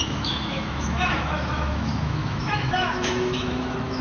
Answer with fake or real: fake